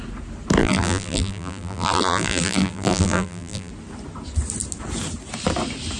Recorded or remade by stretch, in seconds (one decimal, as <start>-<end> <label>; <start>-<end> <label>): 0.0-0.6 recorded; 0.6-3.7 remade; 3.7-6.0 recorded